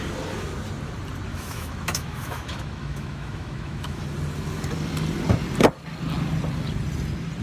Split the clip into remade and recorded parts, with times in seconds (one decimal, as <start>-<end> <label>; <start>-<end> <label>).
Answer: 0.0-1.3 recorded; 1.3-4.0 remade; 4.0-7.4 recorded